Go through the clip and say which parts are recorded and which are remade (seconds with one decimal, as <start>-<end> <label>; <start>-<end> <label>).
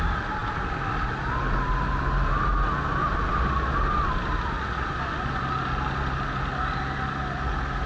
0.0-7.9 recorded